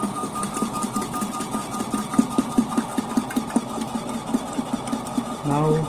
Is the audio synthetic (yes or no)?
no